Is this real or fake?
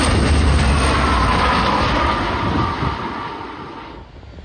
real